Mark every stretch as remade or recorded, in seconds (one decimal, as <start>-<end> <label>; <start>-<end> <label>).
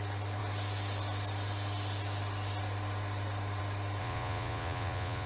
0.0-4.0 recorded; 4.0-5.3 remade